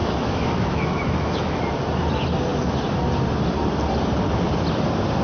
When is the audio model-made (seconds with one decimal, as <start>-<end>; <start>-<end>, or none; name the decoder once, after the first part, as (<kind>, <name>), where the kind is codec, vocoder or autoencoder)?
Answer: 0.0-1.6 (autoencoder, DAC-VAE)